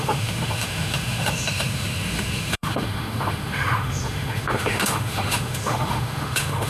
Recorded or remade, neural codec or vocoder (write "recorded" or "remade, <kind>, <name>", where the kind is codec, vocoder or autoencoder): remade, autoencoder, DAC-VAE